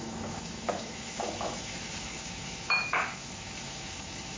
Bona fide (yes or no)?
no